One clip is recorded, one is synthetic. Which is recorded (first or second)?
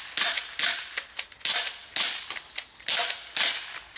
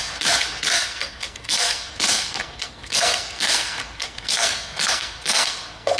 first